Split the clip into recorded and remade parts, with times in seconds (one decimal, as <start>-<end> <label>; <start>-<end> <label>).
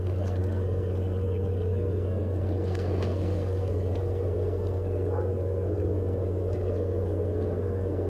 0.0-8.1 remade